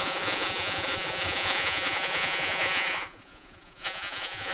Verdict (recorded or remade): remade